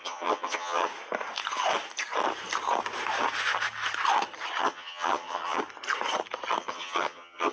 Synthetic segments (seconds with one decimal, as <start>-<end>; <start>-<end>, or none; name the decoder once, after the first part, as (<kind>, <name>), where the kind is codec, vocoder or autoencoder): 0.0-0.9 (vocoder, HiFi-GAN); 4.6-5.6; 6.6-7.5